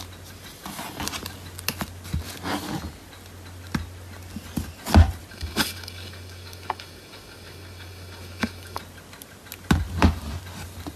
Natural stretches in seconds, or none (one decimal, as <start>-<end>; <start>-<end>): 0.0-5.3; 8.8-11.0